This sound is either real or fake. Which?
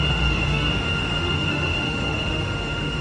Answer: fake